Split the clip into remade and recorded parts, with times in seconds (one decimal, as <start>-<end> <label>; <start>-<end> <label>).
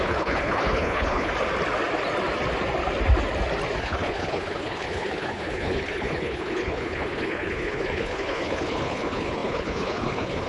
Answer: 0.0-1.3 remade; 1.3-3.8 recorded; 3.8-10.5 remade